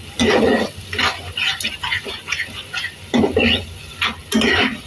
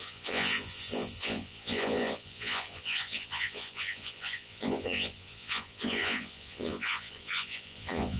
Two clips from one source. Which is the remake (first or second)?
second